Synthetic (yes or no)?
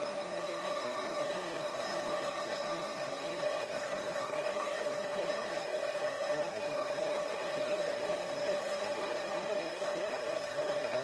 yes